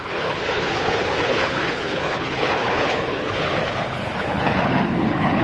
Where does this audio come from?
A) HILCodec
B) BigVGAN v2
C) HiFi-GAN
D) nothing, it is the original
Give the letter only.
A